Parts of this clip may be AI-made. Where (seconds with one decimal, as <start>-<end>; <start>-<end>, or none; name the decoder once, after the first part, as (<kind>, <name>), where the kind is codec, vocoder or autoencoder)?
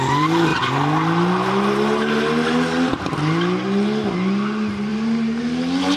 4.9-5.4 (vocoder, BigVGAN v2)